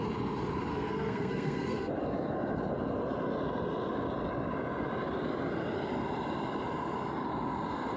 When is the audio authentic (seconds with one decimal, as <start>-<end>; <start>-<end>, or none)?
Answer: 0.0-0.7; 1.9-8.0

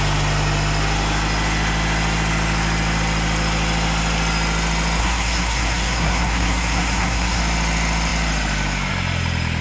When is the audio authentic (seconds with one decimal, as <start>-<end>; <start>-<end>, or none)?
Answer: 0.0-5.0; 7.4-9.6

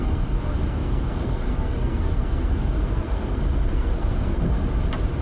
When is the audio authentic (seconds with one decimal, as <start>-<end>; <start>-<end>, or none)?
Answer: 4.6-5.2

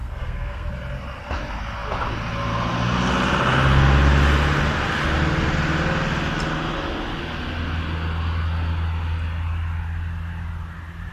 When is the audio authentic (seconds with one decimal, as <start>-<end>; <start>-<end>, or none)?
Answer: 0.7-11.1

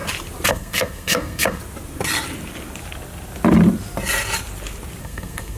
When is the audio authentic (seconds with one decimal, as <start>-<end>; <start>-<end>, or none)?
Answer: 0.0-0.5; 1.6-5.0

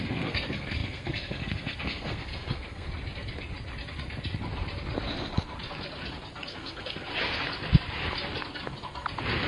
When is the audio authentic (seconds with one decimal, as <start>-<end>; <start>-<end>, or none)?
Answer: 2.9-6.5; 7.1-9.5